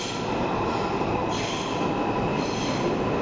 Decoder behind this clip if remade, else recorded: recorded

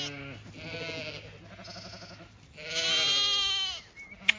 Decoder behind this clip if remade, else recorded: recorded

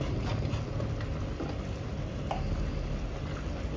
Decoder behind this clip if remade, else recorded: recorded